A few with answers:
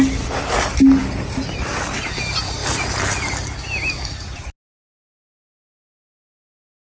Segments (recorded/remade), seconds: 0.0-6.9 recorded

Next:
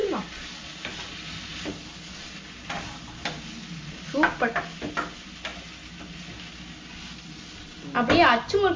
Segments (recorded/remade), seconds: 0.0-8.8 recorded

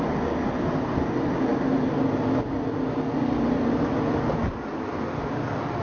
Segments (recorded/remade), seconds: 0.0-5.8 recorded

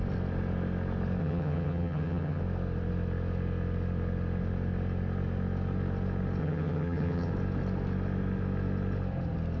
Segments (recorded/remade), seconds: 0.0-1.2 recorded; 1.2-2.4 remade; 2.4-6.4 recorded; 6.4-7.3 remade; 7.3-9.6 recorded

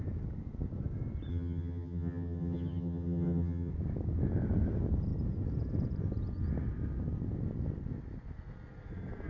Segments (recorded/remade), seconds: 0.0-1.3 recorded; 1.3-3.7 remade; 3.7-9.3 recorded

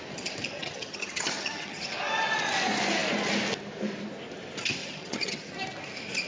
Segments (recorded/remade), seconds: 0.0-0.6 recorded; 0.6-1.8 remade; 1.8-4.8 recorded; 4.8-5.5 remade; 5.5-6.3 recorded

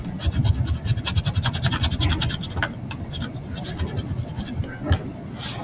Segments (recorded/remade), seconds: 0.0-5.6 recorded

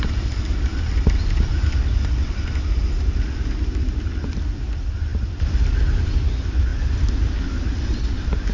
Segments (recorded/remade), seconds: 0.0-8.5 recorded